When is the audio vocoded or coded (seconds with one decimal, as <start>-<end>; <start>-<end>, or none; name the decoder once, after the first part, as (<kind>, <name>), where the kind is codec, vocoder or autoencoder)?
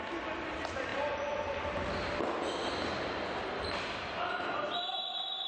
none